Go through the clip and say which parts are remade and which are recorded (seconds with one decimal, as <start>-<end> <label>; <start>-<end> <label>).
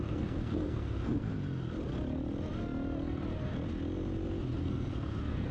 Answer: 0.0-1.3 remade; 1.3-4.6 recorded; 4.6-5.5 remade